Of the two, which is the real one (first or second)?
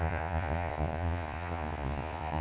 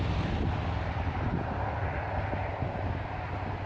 second